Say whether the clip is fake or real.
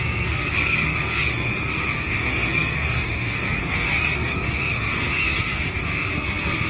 fake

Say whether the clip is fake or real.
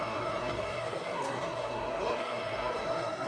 fake